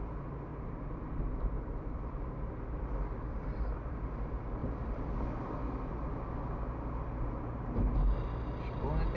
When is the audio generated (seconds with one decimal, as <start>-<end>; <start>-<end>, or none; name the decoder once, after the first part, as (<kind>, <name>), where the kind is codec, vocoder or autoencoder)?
0.5-4.1 (vocoder, BigVGAN v2); 4.6-5.1